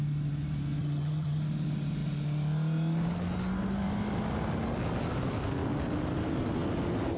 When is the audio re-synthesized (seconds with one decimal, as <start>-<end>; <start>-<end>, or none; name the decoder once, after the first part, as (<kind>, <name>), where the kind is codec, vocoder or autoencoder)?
0.8-1.4 (vocoder, HiFi-GAN)